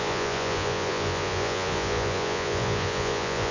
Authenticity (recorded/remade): remade